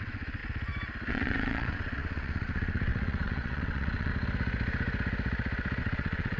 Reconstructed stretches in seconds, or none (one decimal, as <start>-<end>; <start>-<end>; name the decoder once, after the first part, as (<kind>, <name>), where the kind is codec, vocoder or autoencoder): 0.0-0.4 (vocoder, WaveNeXt); 1.1-4.1; 5.8-6.4